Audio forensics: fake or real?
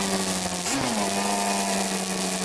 real